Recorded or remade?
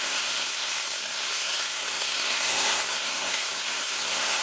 remade